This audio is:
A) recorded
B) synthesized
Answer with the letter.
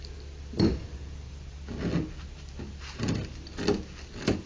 A